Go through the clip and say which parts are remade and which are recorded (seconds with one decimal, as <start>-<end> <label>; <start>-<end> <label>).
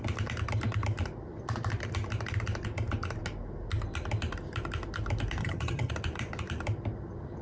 0.0-5.4 recorded; 5.4-5.9 remade; 5.9-7.4 recorded